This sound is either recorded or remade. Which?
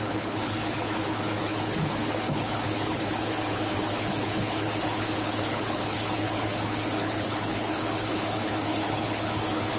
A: remade